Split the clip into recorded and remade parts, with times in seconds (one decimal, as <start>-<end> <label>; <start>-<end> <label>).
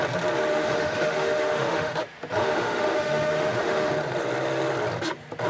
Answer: 0.0-0.5 recorded; 0.5-2.0 remade; 2.0-2.4 recorded; 2.4-3.9 remade; 3.9-5.5 recorded